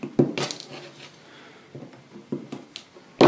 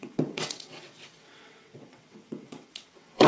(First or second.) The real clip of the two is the first